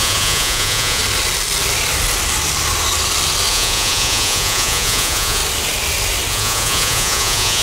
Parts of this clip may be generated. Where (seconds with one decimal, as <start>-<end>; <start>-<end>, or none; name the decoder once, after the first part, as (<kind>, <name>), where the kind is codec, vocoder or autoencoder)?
0.0-1.0 (vocoder, Vocos); 3.5-5.4; 6.3-7.6